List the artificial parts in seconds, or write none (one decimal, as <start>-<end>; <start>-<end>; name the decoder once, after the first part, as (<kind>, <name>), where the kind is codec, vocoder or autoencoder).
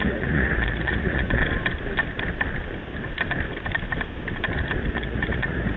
0.0-1.4 (vocoder, Vocos); 4.9-5.8